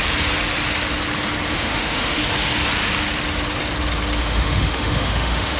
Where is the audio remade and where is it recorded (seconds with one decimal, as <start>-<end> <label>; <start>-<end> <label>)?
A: 0.0-1.5 recorded; 1.5-2.2 remade; 2.2-4.2 recorded; 4.2-5.6 remade